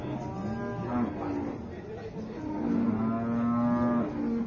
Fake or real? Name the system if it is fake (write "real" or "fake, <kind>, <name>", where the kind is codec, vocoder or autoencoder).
real